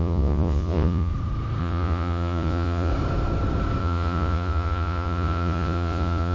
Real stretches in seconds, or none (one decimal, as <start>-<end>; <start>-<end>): 1.1-1.6; 2.9-3.8